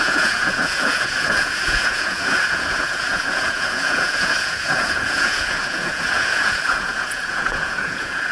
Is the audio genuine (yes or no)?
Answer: no